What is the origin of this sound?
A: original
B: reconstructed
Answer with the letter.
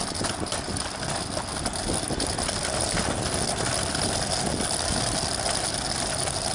A